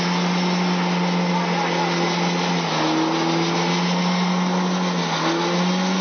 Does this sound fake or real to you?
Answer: real